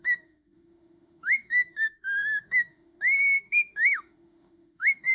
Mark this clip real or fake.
fake